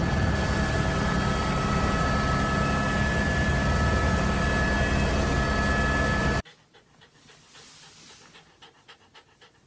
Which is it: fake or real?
real